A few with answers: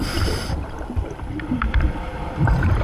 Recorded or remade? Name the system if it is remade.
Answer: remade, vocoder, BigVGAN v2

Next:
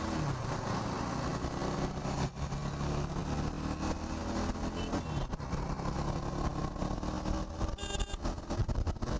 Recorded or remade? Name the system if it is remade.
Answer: recorded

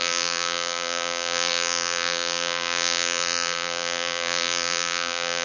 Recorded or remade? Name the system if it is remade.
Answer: remade, vocoder, BigVGAN v2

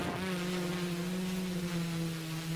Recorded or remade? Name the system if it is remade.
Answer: recorded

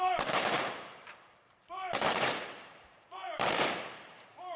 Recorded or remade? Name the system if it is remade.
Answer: remade, vocoder, BigVGAN v2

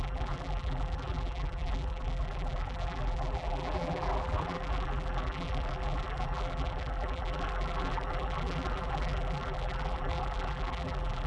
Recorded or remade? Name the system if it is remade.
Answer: remade, vocoder, BigVGAN v2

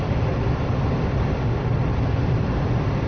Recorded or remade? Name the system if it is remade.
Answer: recorded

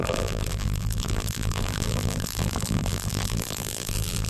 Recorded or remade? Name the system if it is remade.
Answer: remade, vocoder, BigVGAN v2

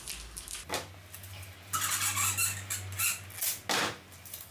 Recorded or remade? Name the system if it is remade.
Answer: recorded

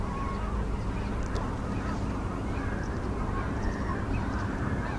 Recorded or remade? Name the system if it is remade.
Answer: remade, vocoder, BigVGAN v2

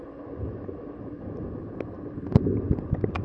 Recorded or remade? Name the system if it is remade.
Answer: recorded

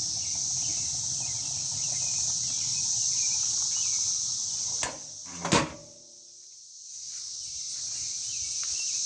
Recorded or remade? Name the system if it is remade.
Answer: recorded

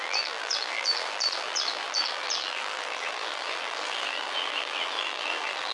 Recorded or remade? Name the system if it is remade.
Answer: remade, vocoder, BigVGAN v2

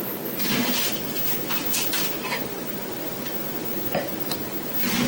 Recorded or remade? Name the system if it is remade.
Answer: remade, vocoder, BigVGAN v2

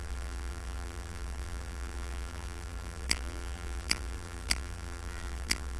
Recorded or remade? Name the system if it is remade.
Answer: remade, vocoder, BigVGAN v2